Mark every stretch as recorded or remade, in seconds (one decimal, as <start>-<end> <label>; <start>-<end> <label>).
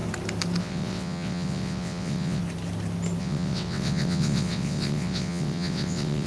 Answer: 0.0-0.6 recorded; 0.6-2.4 remade; 2.4-3.2 recorded; 3.2-6.3 remade